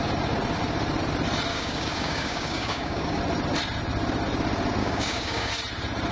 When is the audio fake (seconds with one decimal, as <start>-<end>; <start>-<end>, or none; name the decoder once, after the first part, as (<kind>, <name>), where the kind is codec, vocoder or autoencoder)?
1.5-3.2 (codec, DAC); 4.8-5.5